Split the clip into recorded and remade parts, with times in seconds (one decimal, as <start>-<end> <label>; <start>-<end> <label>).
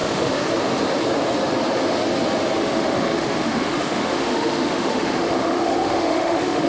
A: 0.0-0.5 remade; 0.5-2.6 recorded; 2.6-6.7 remade